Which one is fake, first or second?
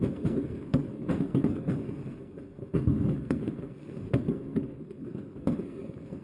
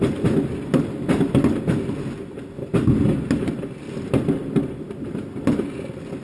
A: first